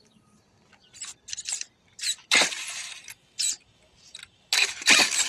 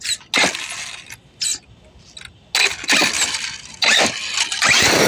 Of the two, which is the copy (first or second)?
first